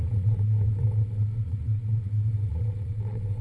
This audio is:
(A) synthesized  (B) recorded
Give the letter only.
A